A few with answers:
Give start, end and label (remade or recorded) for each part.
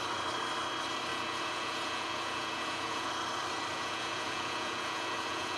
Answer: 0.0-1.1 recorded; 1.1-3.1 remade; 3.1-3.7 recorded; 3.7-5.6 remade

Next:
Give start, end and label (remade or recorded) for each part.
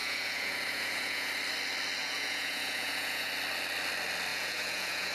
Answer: 0.0-1.3 remade; 1.3-2.0 recorded; 2.0-3.3 remade; 3.3-4.3 recorded; 4.3-5.1 remade